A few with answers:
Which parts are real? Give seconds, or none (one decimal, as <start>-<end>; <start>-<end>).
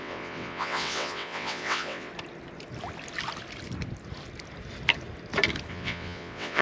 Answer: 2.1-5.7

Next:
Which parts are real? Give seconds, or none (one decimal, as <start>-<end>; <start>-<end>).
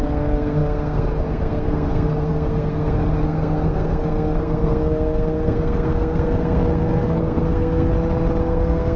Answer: 7.9-8.4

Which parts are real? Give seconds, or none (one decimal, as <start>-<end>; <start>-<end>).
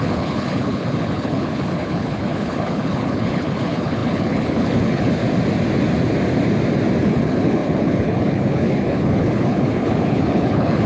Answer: 5.2-7.0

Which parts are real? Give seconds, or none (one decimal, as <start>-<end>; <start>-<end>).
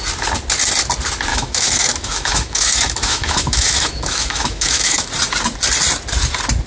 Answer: 0.0-1.3; 5.1-6.7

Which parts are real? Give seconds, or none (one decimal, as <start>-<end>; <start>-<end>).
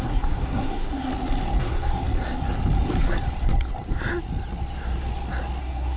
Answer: 1.1-1.6; 2.0-5.6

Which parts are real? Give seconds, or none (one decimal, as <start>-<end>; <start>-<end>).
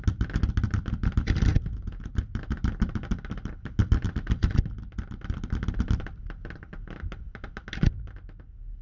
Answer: 0.0-1.5; 2.1-8.8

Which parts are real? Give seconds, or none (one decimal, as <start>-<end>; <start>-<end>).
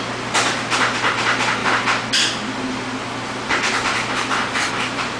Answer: 0.0-5.2